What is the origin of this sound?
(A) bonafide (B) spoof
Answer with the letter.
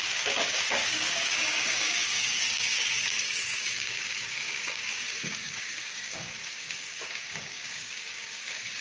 B